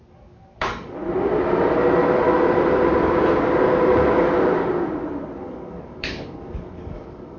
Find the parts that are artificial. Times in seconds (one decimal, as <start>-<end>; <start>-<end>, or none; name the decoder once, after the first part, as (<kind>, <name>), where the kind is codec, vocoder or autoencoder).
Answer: 0.0-1.0 (codec, DAC); 5.4-7.4